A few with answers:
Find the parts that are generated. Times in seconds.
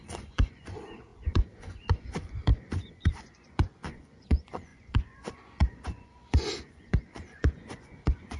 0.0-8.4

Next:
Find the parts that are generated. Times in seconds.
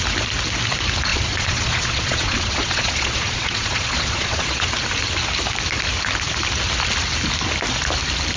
1.1-4.7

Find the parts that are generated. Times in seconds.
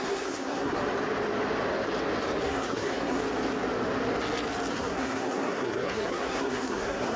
0.0-0.8; 2.4-3.2; 4.7-7.2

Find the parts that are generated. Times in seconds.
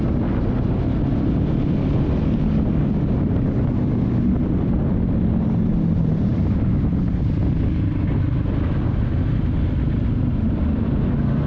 none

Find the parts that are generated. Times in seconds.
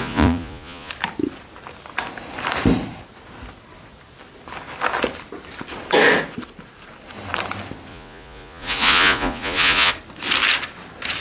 0.0-0.9; 7.9-9.9